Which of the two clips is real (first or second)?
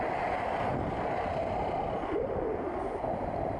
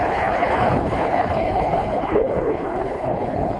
first